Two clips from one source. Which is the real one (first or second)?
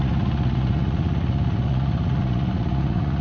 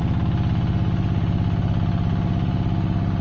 second